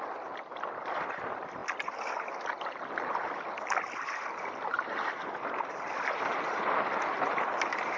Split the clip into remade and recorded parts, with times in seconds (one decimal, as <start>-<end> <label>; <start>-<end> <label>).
0.0-8.0 recorded